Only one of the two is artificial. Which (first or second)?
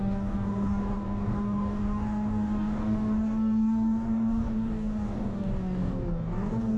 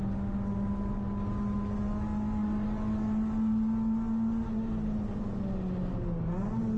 first